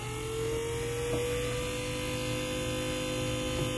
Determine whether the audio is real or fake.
real